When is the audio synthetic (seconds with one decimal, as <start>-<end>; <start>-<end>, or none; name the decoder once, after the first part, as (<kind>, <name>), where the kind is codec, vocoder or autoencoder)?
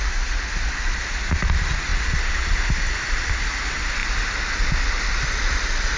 none